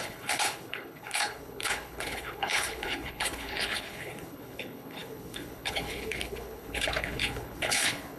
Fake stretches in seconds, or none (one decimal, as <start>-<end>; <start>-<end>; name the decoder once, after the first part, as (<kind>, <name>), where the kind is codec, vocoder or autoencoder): 0.0-8.2 (codec, HILCodec)